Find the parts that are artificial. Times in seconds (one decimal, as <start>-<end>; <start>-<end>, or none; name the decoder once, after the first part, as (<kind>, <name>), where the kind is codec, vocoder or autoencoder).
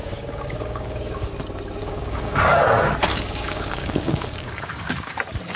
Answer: 0.0-1.3 (codec, DAC); 1.8-2.5; 3.1-5.1